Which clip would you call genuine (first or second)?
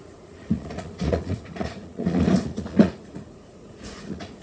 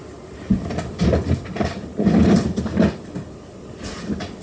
second